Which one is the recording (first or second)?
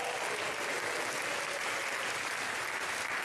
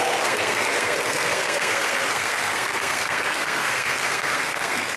first